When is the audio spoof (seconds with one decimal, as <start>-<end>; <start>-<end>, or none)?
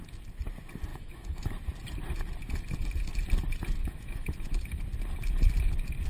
0.9-1.5; 3.8-4.8